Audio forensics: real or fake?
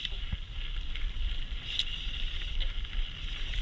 real